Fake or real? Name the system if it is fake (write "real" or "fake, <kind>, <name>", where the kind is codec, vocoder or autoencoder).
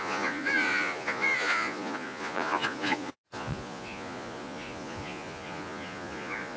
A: fake, vocoder, Vocos